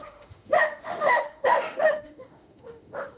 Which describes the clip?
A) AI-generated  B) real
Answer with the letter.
A